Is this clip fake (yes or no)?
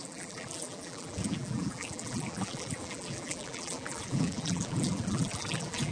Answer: yes